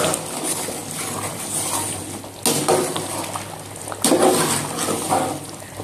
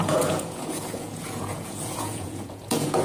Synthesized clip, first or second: second